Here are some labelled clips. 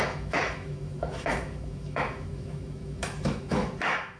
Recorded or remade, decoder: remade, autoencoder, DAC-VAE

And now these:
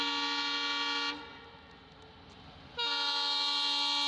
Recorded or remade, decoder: recorded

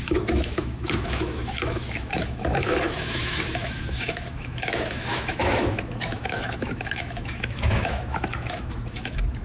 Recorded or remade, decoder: remade, autoencoder, DAC-VAE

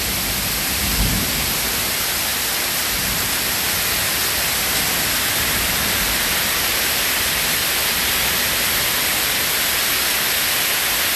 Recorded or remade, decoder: recorded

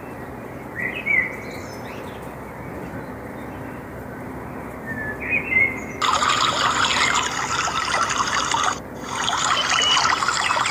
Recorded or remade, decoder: recorded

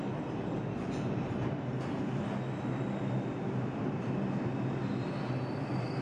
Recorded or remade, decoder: recorded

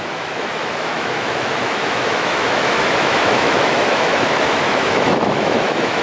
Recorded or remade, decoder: remade, autoencoder, DAC-VAE